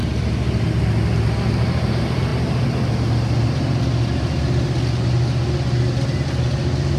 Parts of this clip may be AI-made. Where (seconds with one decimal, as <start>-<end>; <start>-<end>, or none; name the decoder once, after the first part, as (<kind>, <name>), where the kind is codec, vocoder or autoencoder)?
none